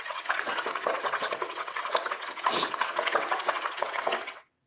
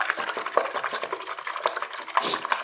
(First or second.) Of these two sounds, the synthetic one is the first